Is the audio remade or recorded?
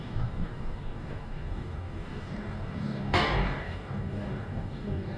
remade